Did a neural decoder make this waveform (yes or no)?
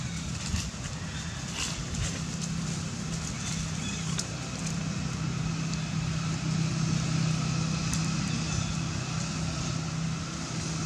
no